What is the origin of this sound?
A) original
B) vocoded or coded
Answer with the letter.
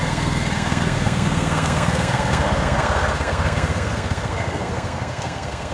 B